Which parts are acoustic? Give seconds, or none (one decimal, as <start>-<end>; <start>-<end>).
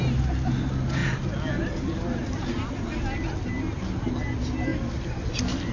0.0-5.7